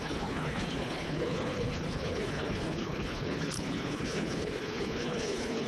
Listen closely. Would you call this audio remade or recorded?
remade